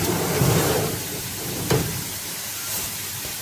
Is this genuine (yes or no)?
no